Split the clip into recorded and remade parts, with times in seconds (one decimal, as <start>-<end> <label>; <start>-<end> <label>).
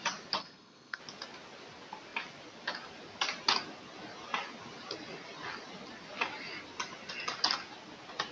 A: 0.0-0.4 recorded; 0.4-1.0 remade; 1.0-8.3 recorded